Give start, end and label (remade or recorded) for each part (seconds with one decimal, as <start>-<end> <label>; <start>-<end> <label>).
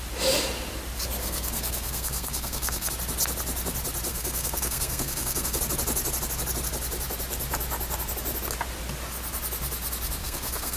0.0-1.2 recorded; 1.2-2.9 remade; 2.9-4.1 recorded; 4.1-5.6 remade; 5.6-10.2 recorded; 10.2-10.8 remade